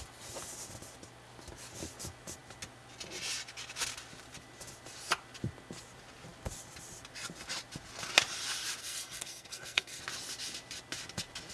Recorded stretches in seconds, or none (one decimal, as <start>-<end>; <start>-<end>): 0.0-8.8; 10.0-11.5